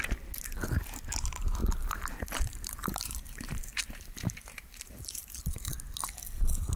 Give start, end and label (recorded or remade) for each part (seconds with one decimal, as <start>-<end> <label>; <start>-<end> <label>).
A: 0.0-1.6 recorded; 1.6-5.7 remade; 5.7-6.8 recorded